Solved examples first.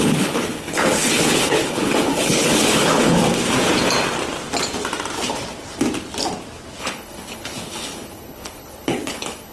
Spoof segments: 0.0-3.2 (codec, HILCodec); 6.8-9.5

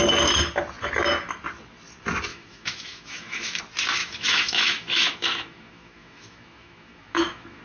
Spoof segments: 2.3-3.6 (autoencoder, DAC-VAE); 4.0-7.6

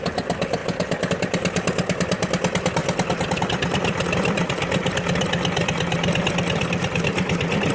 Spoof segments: none

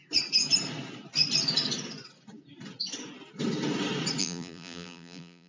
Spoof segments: 4.2-5.5 (vocoder, BigVGAN v2)

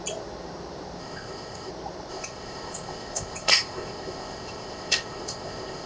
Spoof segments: 1.0-1.7 (codec, ZipCodec); 2.1-5.9

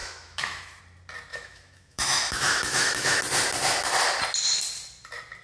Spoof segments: 0.0-0.8 (autoencoder, DAC-VAE); 1.3-3.2

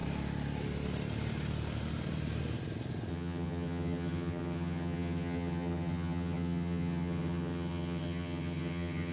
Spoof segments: 3.1-9.1 (vocoder, HiFi-GAN)

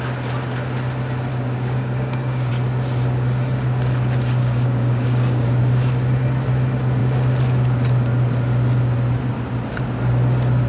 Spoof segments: 1.3-2.5 (codec, DAC); 4.4-5.6